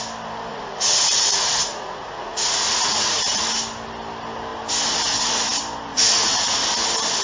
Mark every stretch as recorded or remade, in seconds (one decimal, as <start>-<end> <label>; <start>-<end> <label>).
0.0-0.5 recorded; 0.5-3.3 remade; 3.3-5.9 recorded; 5.9-6.6 remade; 6.6-7.2 recorded